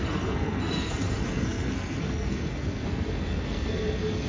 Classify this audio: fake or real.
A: fake